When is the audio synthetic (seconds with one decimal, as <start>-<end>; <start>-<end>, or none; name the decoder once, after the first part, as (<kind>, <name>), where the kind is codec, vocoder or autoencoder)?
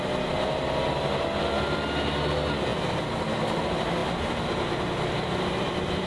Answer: none